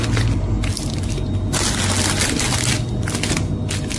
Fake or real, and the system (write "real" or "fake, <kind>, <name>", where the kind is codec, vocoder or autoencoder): real